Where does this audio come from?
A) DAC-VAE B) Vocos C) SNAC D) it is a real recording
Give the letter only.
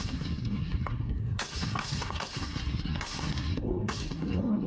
C